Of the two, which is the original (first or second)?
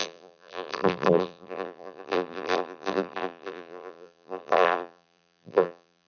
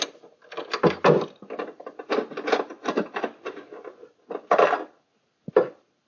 second